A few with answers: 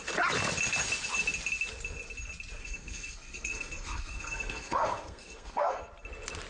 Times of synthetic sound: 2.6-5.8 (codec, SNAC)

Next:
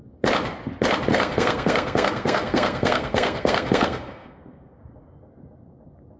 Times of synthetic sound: 1.1-4.8 (codec, SNAC)

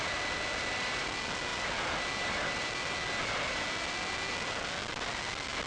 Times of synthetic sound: none

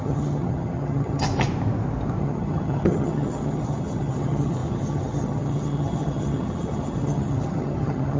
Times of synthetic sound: 0.0-1.3 (vocoder, HiFi-GAN); 2.2-8.2

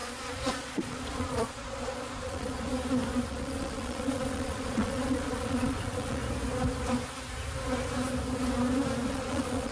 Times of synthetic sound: 0.0-2.7 (vocoder, Vocos); 3.3-6.2; 9.1-9.7

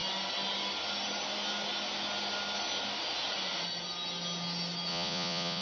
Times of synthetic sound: 4.9-5.6 (vocoder, Vocos)

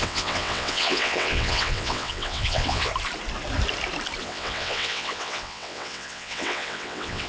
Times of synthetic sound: 0.0-2.9 (vocoder, WaveNeXt); 4.2-7.3

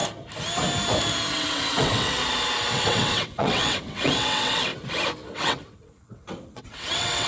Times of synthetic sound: 1.3-2.2 (vocoder, WaveNeXt); 2.7-4.7; 5.3-7.3